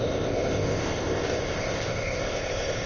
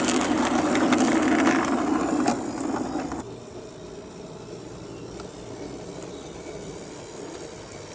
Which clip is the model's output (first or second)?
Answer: first